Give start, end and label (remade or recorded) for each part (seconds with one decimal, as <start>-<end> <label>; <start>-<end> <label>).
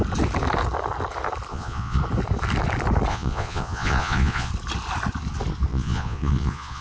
0.0-1.5 recorded; 1.5-2.0 remade; 2.0-3.1 recorded; 3.1-4.5 remade; 4.5-5.7 recorded; 5.7-6.8 remade